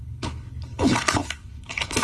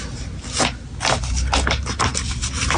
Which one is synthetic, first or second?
first